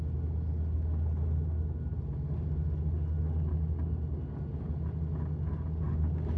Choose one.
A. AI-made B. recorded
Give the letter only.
B